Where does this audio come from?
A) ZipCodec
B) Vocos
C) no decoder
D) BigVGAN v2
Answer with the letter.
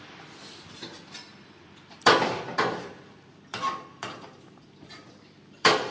D